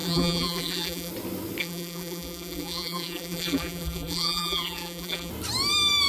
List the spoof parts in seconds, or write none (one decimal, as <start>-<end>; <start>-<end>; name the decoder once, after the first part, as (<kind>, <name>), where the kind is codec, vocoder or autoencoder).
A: 0.0-1.1 (vocoder, BigVGAN v2); 1.6-5.3